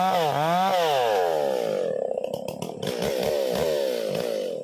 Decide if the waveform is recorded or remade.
recorded